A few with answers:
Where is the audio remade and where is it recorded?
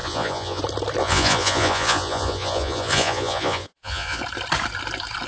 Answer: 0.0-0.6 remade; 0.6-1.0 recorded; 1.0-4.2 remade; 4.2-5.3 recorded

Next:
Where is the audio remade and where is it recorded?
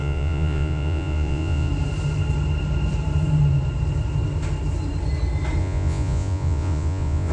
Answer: 0.0-1.7 remade; 1.7-5.6 recorded; 5.6-7.3 remade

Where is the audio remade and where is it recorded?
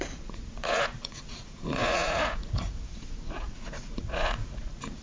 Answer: 0.0-5.0 remade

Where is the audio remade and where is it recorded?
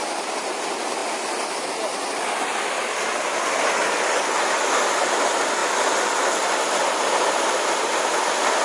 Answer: 0.0-8.6 recorded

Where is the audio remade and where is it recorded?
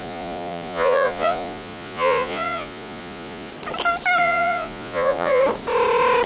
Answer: 0.0-3.5 remade; 3.5-4.2 recorded; 4.2-5.4 remade; 5.4-6.3 recorded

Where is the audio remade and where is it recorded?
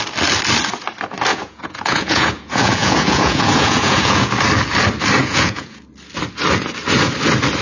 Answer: 0.0-1.3 recorded; 1.3-4.3 remade; 4.3-5.2 recorded; 5.2-5.8 remade; 5.8-7.6 recorded